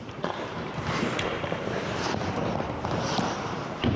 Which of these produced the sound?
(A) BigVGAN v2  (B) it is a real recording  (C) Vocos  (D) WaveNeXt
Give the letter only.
A